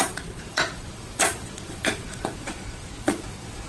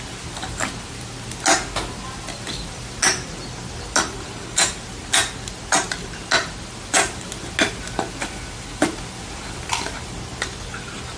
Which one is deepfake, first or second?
first